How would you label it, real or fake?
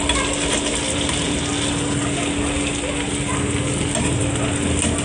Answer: real